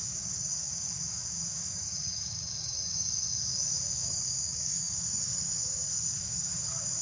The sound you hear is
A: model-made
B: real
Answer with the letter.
A